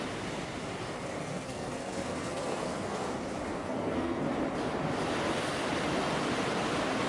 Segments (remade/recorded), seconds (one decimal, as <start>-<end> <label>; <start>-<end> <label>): 0.0-1.2 recorded; 1.2-3.1 remade; 3.1-3.5 recorded; 3.5-4.2 remade; 4.2-7.1 recorded